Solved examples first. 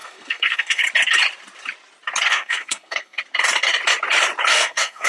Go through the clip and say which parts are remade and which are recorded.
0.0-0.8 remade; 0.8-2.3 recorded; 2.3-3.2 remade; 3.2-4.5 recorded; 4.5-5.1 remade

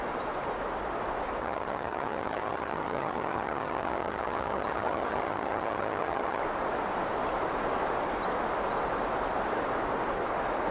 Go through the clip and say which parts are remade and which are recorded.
0.0-1.4 recorded; 1.4-6.4 remade; 6.4-10.7 recorded

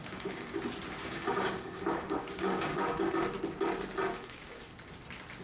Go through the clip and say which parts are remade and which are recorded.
0.0-0.6 remade; 0.6-1.0 recorded; 1.0-3.0 remade; 3.0-4.1 recorded; 4.1-4.9 remade; 4.9-5.4 recorded

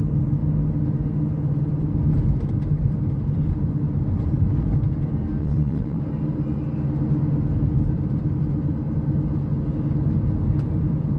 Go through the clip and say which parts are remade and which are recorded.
0.0-5.4 recorded; 5.4-6.0 remade; 6.0-11.2 recorded

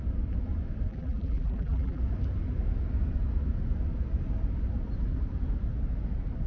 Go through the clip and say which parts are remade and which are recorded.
0.0-0.9 recorded; 0.9-2.0 remade; 2.0-6.5 recorded

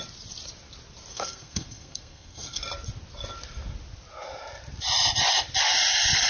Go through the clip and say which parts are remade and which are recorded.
0.0-1.1 recorded; 1.1-2.6 remade; 2.6-6.3 recorded

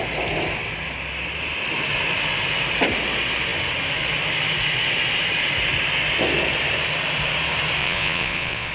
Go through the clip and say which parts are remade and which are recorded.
0.0-7.8 recorded; 7.8-8.7 remade